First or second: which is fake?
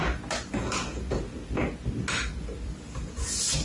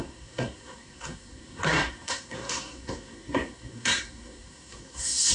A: second